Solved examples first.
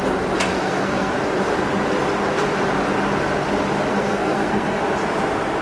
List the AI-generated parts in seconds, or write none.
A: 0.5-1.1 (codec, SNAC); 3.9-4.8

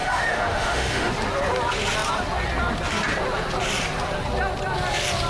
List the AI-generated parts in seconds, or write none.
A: 0.0-1.1 (autoencoder, DAC-VAE)

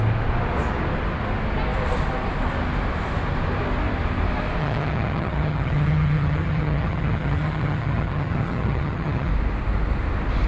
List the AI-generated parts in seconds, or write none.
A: 4.6-9.3 (vocoder, HiFi-GAN)

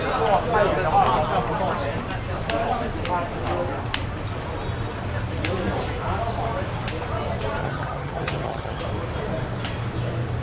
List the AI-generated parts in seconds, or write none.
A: 7.6-8.8 (vocoder, HiFi-GAN)